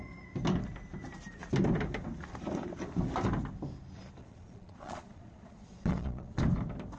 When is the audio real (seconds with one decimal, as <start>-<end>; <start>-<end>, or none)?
0.0-4.2; 6.4-7.0